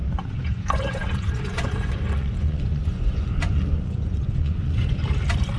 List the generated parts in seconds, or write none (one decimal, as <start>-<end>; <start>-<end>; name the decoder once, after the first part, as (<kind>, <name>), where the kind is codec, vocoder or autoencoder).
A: 0.0-5.0 (vocoder, Vocos)